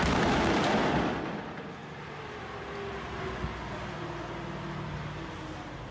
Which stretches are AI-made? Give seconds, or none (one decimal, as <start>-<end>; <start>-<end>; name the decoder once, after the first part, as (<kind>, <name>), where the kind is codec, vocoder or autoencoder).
none